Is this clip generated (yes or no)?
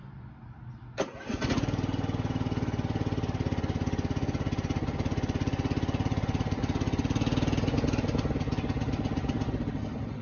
no